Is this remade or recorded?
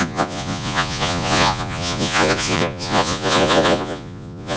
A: remade